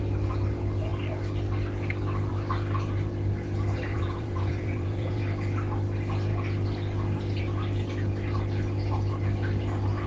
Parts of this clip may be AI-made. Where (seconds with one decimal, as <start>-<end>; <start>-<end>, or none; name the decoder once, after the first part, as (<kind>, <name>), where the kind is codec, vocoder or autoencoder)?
3.9-5.2 (vocoder, Vocos)